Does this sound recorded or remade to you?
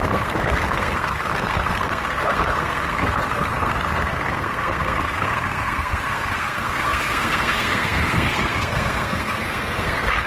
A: remade